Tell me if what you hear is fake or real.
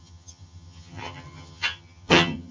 fake